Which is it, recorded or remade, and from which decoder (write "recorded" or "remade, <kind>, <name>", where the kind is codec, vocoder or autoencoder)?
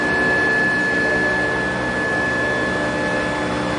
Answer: recorded